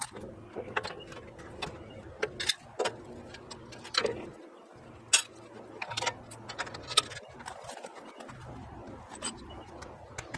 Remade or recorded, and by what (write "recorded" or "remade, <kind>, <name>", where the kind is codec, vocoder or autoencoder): recorded